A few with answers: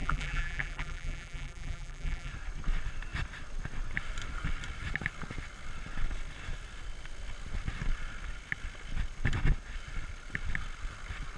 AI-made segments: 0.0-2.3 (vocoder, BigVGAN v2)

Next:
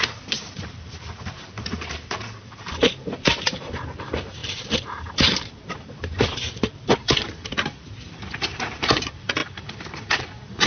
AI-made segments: 0.0-10.7 (vocoder, BigVGAN v2)

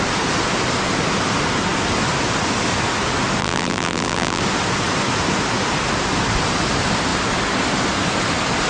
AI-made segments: 3.4-4.4 (vocoder, BigVGAN v2)

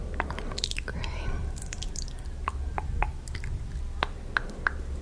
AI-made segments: 0.0-3.0 (vocoder, BigVGAN v2)

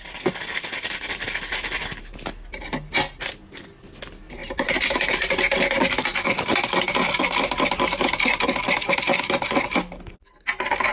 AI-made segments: 4.4-4.9 (vocoder, BigVGAN v2)

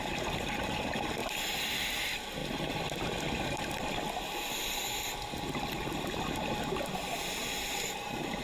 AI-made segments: none

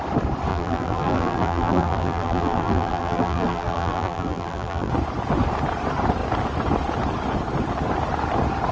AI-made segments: 0.5-4.9 (vocoder, BigVGAN v2)